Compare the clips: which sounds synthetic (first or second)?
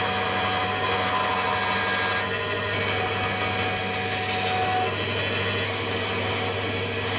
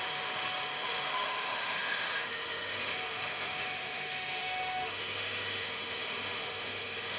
second